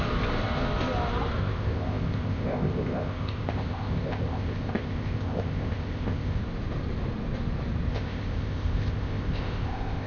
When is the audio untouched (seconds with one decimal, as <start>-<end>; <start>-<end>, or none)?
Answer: 0.0-1.4; 6.4-7.9